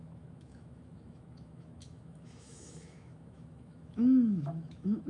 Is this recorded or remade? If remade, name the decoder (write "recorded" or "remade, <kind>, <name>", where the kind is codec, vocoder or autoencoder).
remade, autoencoder, DAC-VAE